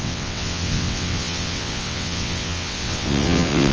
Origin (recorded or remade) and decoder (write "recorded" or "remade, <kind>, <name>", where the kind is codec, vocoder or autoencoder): remade, vocoder, WaveNeXt